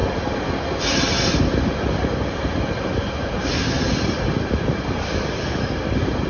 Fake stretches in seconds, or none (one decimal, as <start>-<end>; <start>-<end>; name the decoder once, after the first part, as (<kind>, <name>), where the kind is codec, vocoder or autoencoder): none